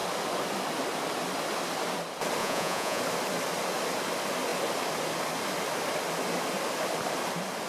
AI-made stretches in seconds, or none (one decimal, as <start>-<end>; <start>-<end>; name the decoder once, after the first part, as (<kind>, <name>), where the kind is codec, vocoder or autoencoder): 2.4-3.0 (vocoder, Vocos)